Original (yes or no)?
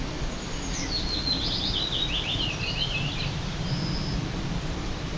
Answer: yes